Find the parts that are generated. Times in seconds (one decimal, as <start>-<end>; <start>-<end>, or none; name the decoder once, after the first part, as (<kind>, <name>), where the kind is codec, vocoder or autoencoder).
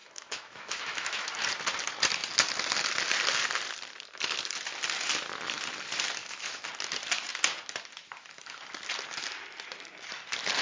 0.0-1.3 (autoencoder, DAC-VAE); 6.2-6.7